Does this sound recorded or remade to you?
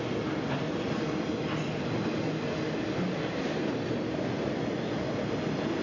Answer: recorded